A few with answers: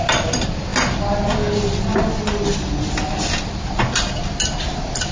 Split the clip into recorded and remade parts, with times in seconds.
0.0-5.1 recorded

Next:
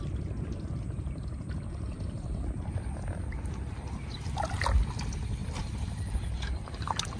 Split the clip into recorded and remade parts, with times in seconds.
0.0-7.2 recorded

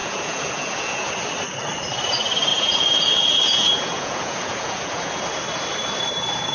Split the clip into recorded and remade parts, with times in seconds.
0.0-1.1 remade; 1.1-2.5 recorded; 2.5-5.2 remade; 5.2-6.5 recorded

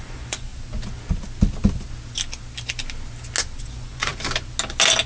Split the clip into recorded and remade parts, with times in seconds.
0.0-0.5 remade; 0.5-3.6 recorded; 3.6-4.1 remade; 4.1-5.1 recorded

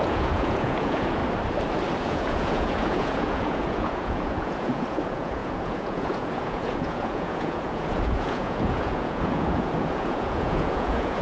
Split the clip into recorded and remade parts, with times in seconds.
0.0-1.2 remade; 1.2-2.0 recorded; 2.0-11.2 remade

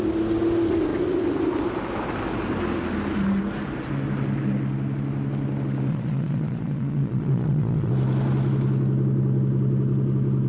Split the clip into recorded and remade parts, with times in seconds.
0.0-5.9 recorded; 5.9-7.9 remade; 7.9-10.5 recorded

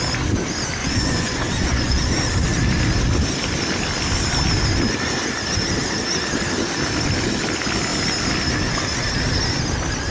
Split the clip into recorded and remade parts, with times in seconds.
0.0-0.8 recorded; 0.8-2.1 remade; 2.1-10.1 recorded

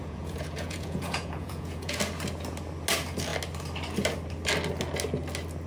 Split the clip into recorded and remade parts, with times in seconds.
0.0-2.0 remade; 2.0-5.7 recorded